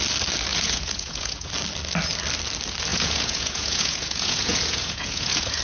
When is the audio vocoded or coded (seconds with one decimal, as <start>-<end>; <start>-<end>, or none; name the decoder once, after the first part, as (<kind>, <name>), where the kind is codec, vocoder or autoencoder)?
0.5-1.5 (vocoder, Vocos); 2.9-5.6